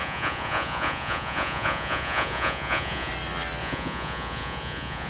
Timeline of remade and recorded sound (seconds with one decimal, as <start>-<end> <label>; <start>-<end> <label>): 0.0-3.1 remade; 3.1-3.6 recorded; 3.6-5.1 remade